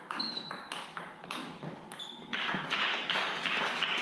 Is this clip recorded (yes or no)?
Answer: no